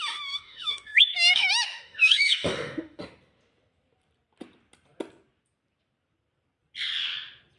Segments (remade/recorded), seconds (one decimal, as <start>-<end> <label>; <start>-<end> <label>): 0.0-3.0 remade; 3.0-7.6 recorded